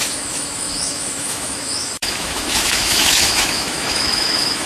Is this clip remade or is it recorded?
remade